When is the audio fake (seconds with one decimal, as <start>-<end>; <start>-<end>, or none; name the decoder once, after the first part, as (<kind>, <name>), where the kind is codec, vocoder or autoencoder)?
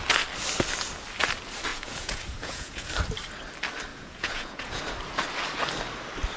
1.7-2.9 (vocoder, Vocos); 3.9-4.8